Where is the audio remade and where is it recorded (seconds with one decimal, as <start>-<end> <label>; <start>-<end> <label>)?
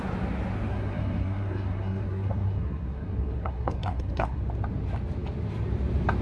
0.0-0.7 recorded; 0.7-4.4 remade; 4.4-6.2 recorded